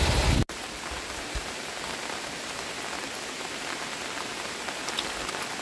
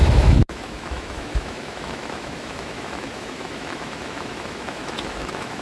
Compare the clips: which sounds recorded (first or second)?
first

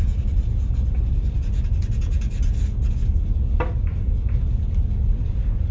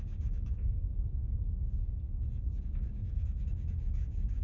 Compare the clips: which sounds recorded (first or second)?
first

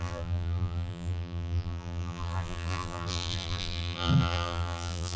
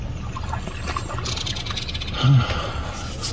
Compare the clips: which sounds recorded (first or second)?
second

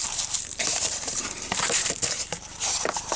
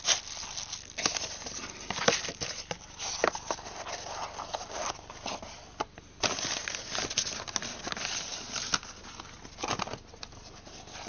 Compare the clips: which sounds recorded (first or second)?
second